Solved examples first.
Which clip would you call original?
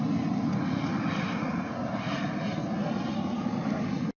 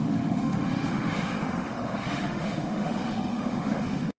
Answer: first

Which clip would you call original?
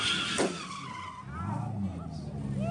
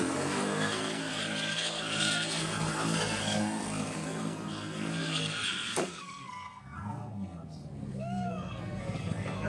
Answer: first